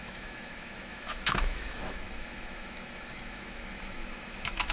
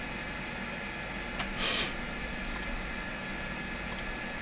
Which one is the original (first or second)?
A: second